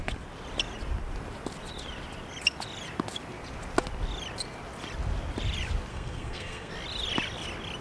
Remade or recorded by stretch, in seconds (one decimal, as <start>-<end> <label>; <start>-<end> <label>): 0.0-5.9 recorded; 5.9-6.7 remade; 6.7-7.8 recorded